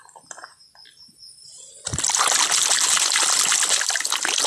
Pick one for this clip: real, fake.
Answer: real